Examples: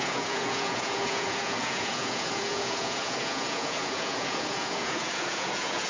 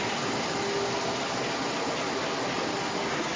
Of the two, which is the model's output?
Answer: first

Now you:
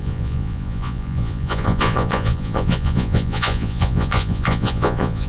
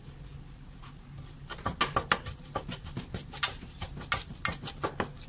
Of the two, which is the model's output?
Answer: first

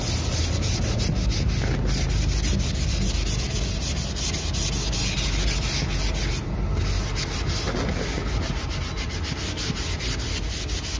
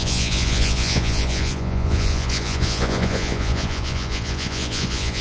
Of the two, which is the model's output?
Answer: second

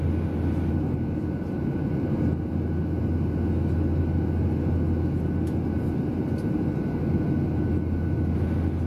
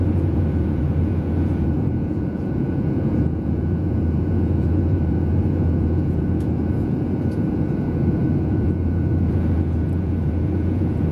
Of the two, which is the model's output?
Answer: second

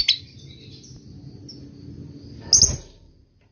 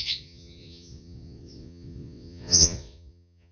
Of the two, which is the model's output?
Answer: second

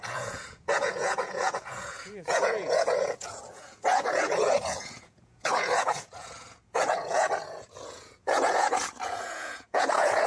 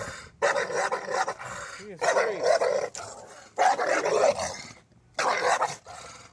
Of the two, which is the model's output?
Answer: first